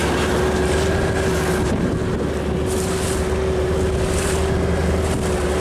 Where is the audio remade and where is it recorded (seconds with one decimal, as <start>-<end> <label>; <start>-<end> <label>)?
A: 0.0-5.6 recorded